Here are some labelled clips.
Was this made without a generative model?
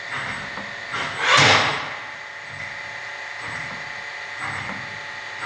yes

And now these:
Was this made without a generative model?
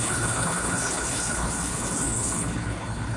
no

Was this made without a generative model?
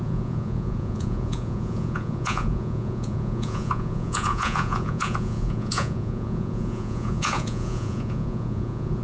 no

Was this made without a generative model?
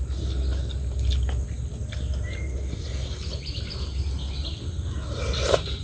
yes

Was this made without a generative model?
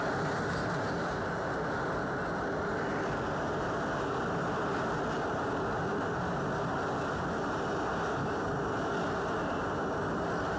yes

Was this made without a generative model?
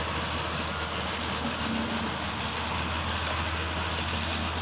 yes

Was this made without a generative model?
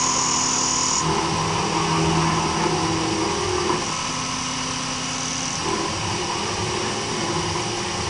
yes